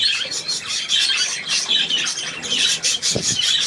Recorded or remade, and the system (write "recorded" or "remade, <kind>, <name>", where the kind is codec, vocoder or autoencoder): recorded